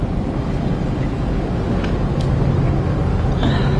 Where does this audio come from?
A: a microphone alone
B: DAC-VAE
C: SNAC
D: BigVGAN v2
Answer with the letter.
A